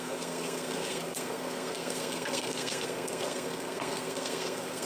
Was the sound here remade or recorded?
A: remade